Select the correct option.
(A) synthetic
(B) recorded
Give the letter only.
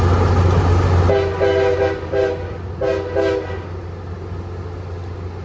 B